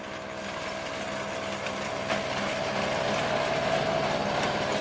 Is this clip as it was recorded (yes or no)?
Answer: yes